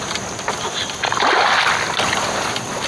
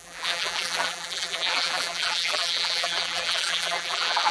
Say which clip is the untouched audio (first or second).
first